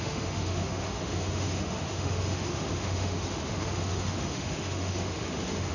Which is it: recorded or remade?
remade